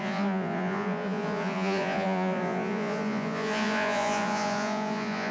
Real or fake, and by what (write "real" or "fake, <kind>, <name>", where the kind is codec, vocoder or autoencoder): fake, vocoder, Vocos